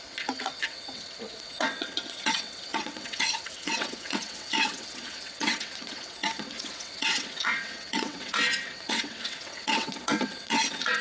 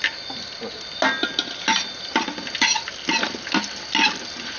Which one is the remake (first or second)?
first